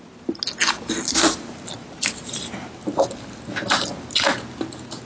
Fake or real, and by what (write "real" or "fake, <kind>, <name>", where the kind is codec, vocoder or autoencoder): real